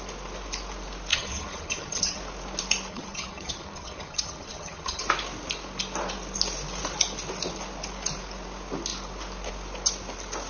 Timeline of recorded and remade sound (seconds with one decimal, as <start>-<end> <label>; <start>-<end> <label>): 0.0-1.1 recorded; 1.1-2.2 remade; 2.2-2.9 recorded; 2.9-5.0 remade; 5.0-10.5 recorded